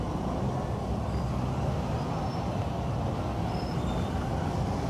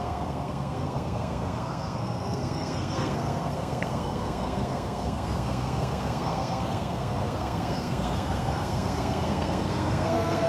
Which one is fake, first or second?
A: second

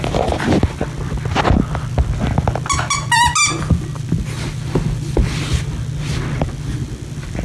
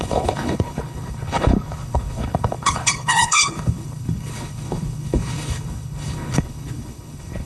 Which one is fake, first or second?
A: second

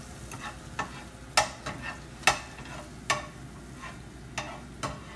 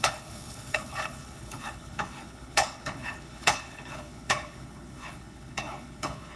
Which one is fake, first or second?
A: second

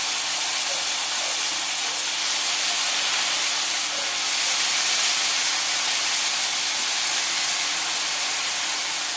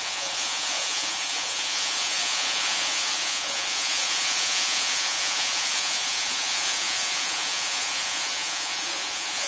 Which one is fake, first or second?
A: second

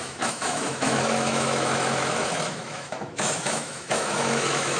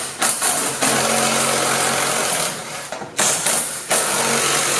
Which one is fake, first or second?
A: first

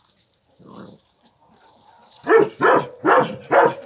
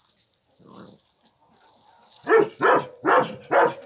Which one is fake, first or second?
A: first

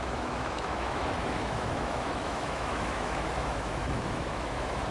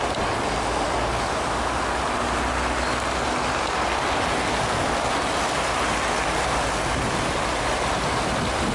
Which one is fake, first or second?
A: first